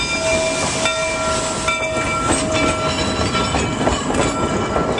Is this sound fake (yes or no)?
no